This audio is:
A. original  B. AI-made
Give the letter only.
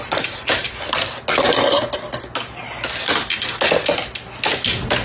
A